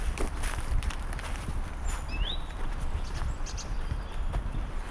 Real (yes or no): no